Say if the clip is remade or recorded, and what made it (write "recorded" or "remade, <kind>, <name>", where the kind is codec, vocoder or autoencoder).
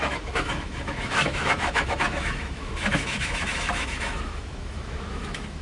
remade, autoencoder, DAC-VAE